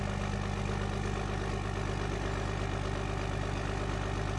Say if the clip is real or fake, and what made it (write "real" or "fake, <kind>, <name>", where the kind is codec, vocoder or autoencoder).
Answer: real